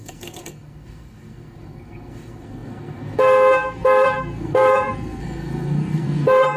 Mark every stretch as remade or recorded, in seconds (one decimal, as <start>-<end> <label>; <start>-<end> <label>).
0.0-6.6 remade